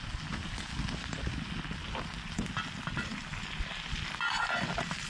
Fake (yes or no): no